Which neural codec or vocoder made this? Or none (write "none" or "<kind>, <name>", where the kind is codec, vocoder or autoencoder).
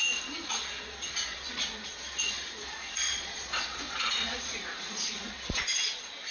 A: vocoder, Vocos